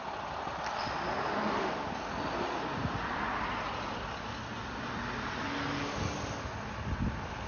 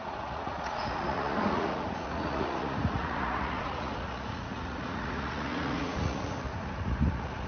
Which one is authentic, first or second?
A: first